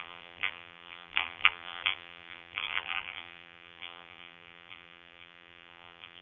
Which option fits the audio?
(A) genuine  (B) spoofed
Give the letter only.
B